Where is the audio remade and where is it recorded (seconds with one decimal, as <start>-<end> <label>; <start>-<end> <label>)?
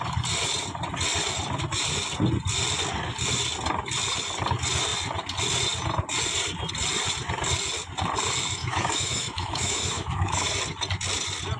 0.0-8.6 recorded; 8.6-10.5 remade; 10.5-11.6 recorded